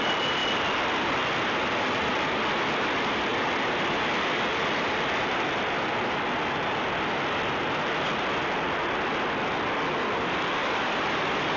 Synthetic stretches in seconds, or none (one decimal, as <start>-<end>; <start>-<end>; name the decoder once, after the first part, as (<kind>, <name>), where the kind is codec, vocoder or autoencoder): 10.6-11.6 (vocoder, BigVGAN v2)